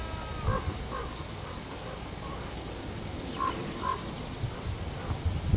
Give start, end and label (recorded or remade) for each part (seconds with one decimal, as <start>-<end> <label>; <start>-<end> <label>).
0.0-1.0 recorded; 1.0-3.3 remade; 3.3-5.6 recorded